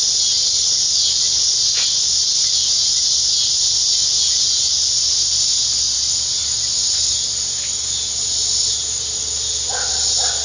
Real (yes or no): yes